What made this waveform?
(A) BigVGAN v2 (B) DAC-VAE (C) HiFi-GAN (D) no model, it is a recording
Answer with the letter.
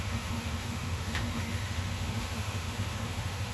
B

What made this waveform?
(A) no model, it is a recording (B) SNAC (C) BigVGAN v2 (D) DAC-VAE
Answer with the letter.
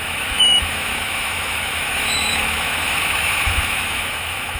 D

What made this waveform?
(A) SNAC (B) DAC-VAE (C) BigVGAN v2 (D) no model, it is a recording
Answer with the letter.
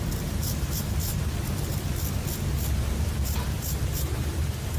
D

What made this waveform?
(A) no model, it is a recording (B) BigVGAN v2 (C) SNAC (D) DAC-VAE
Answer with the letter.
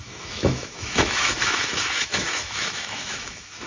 D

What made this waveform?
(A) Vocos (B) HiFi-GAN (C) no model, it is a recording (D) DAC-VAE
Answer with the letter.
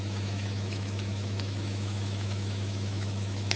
D